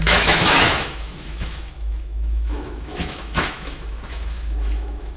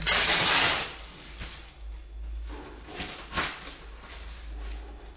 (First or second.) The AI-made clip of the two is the first